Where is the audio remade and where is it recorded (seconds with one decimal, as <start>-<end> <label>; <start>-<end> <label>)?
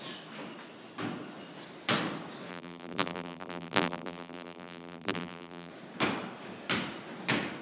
0.0-2.5 recorded; 2.5-5.7 remade; 5.7-7.6 recorded